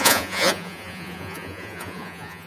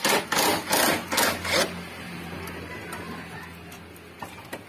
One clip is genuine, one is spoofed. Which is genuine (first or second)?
second